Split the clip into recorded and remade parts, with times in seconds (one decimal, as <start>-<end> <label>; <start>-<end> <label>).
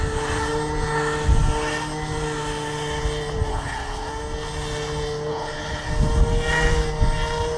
0.0-3.5 recorded; 3.5-4.1 remade; 4.1-5.3 recorded; 5.3-5.9 remade; 5.9-7.6 recorded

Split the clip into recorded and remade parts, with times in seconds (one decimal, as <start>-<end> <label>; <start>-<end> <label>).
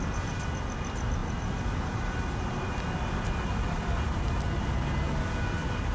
0.0-1.2 recorded; 1.2-4.3 remade; 4.3-5.9 recorded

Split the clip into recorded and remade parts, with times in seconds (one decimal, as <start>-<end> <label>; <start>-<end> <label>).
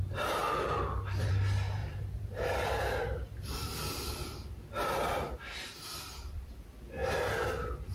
0.0-0.4 recorded; 0.4-1.3 remade; 1.3-1.8 recorded; 1.8-6.5 remade; 6.5-7.0 recorded; 7.0-7.5 remade; 7.5-7.9 recorded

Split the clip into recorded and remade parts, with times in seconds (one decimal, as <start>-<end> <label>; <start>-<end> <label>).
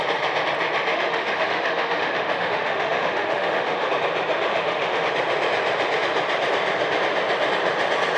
0.0-0.9 recorded; 0.9-3.9 remade; 3.9-4.5 recorded; 4.5-5.1 remade; 5.1-8.2 recorded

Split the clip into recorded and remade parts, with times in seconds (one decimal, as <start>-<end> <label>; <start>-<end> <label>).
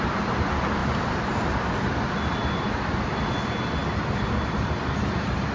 0.0-5.5 recorded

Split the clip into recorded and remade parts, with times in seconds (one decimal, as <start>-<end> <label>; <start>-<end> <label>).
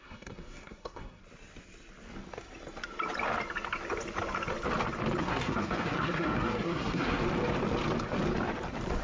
0.0-1.2 remade; 1.2-5.2 recorded; 5.2-7.2 remade; 7.2-9.0 recorded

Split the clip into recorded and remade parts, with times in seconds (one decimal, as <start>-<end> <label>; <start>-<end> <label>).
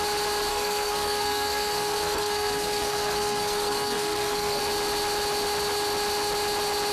0.0-0.5 recorded; 0.5-4.6 remade; 4.6-6.9 recorded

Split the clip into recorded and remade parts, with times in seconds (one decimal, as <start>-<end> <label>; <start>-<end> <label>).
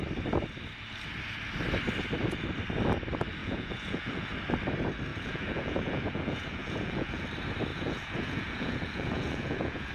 0.0-3.4 recorded; 3.4-4.3 remade; 4.3-5.1 recorded; 5.1-7.2 remade; 7.2-7.7 recorded; 7.7-9.9 remade